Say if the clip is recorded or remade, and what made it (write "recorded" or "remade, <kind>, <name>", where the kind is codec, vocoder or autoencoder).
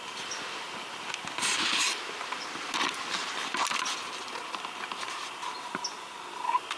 recorded